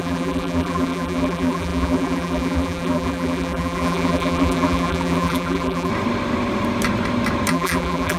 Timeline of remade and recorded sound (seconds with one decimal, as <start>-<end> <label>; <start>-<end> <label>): 0.0-5.9 remade; 5.9-7.5 recorded; 7.5-8.2 remade